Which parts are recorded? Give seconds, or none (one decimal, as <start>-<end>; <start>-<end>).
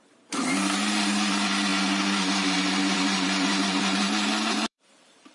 none